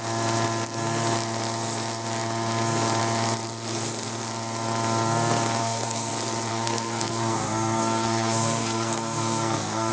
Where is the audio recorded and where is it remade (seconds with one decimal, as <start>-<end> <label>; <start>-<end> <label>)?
0.0-5.6 recorded; 5.6-6.1 remade; 6.1-6.5 recorded; 6.5-9.9 remade